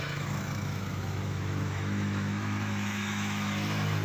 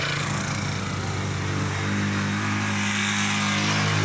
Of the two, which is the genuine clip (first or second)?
second